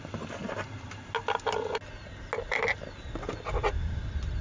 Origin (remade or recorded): recorded